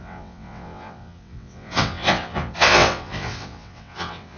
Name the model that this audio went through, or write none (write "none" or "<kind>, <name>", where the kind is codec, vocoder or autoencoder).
vocoder, WaveNeXt